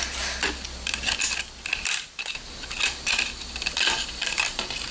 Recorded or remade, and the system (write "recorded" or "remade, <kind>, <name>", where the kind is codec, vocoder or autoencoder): recorded